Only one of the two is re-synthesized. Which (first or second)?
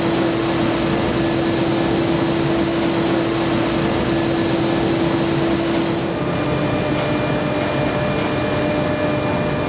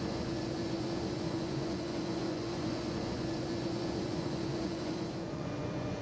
second